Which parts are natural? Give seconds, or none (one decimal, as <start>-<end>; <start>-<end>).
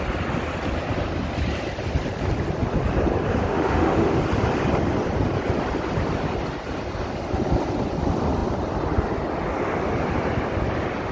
0.0-3.4; 4.2-11.1